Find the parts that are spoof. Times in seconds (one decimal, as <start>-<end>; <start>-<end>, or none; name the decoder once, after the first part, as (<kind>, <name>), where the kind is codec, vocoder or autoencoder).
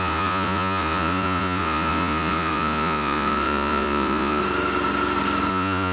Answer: 0.0-4.4 (vocoder, Vocos); 5.5-5.9